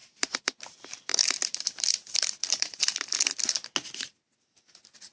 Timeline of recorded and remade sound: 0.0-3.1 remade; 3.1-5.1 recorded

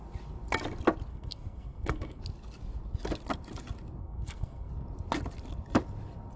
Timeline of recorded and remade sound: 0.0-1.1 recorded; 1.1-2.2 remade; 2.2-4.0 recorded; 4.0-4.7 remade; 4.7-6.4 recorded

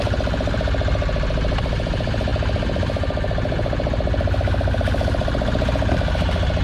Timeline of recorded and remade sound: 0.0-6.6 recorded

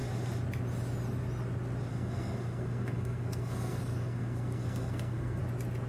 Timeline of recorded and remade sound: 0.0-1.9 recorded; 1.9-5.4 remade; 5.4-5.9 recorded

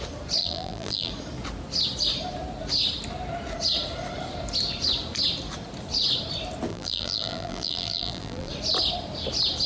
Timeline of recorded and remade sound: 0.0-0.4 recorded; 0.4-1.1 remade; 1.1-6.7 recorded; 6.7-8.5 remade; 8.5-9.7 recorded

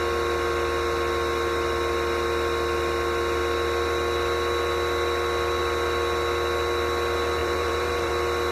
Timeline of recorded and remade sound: 0.0-7.4 recorded; 7.4-8.1 remade; 8.1-8.5 recorded

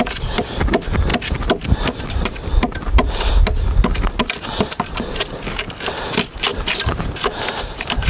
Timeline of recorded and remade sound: 0.0-8.1 recorded